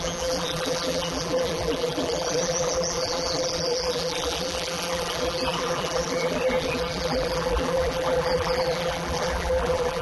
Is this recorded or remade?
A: remade